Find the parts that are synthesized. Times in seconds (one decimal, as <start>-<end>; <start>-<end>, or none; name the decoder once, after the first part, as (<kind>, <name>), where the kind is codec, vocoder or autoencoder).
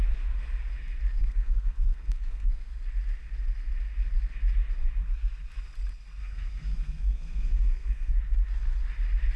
1.2-2.7 (codec, SNAC); 6.2-8.1